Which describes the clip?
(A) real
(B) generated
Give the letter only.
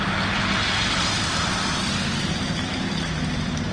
A